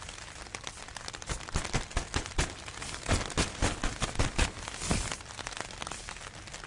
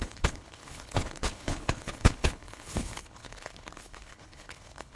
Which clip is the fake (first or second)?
second